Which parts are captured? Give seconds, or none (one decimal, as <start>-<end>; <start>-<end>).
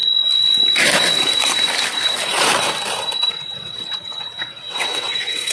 0.0-3.3